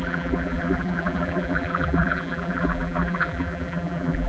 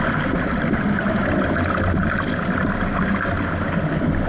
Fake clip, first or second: first